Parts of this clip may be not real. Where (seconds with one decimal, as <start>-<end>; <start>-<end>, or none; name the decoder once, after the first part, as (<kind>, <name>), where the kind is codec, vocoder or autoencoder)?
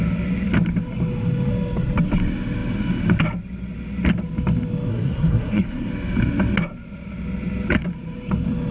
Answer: 4.9-5.9 (codec, SNAC)